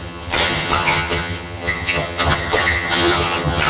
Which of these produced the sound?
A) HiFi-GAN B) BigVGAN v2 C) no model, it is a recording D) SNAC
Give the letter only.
A